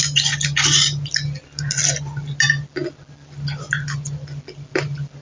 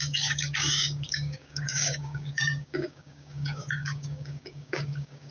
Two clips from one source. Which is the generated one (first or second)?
second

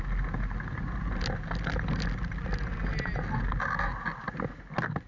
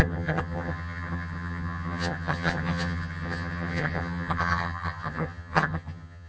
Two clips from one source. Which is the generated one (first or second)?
second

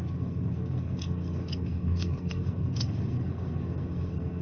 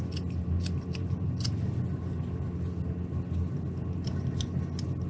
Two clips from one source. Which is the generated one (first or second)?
first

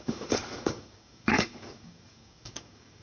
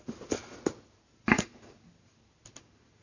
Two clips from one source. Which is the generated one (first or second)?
first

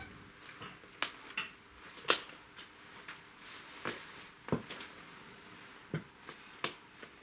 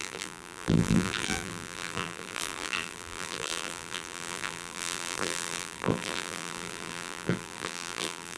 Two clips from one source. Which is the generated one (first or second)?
second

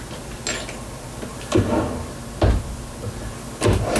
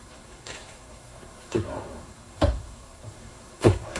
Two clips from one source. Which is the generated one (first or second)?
second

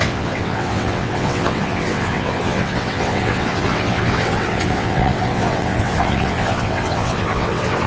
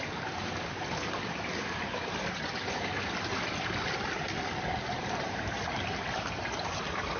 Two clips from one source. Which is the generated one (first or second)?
first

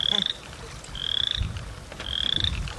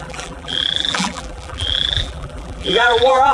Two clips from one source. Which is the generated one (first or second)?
second